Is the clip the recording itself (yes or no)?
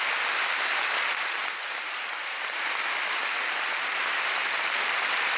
yes